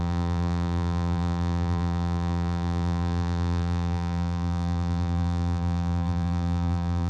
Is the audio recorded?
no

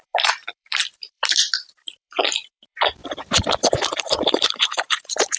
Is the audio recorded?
no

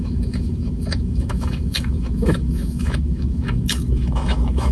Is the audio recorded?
no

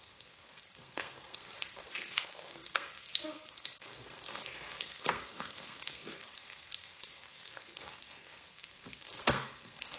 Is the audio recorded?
no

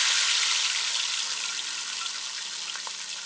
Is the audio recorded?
yes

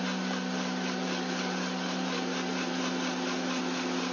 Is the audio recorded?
yes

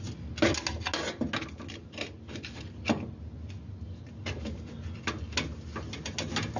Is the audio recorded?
yes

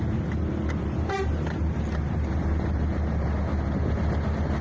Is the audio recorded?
yes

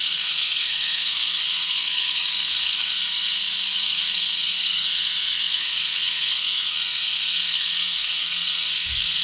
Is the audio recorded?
no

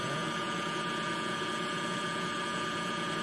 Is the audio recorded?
no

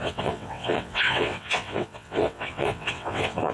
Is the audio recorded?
no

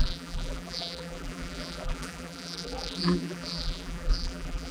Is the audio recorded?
no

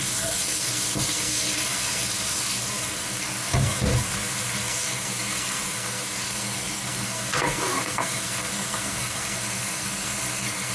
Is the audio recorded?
no